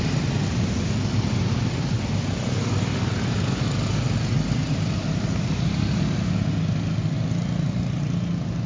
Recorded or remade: recorded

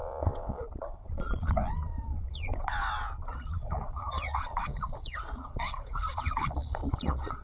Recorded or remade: remade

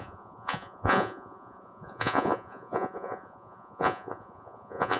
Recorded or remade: remade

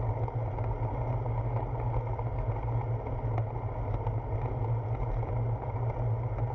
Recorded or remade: recorded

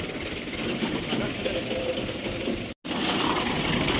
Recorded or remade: recorded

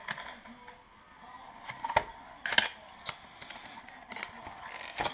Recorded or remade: recorded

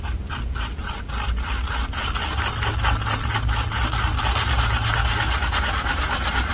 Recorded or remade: recorded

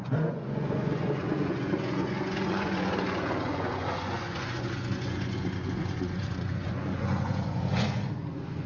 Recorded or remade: remade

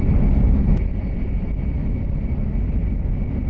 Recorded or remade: recorded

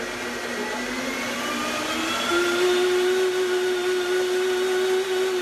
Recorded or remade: recorded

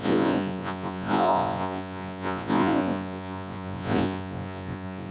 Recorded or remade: remade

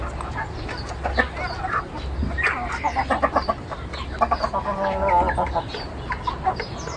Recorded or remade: recorded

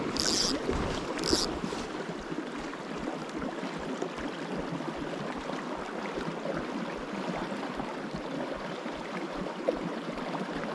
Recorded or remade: recorded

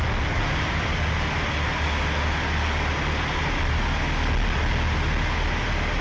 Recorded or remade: recorded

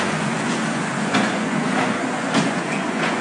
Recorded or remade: remade